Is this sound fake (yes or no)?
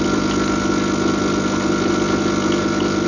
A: no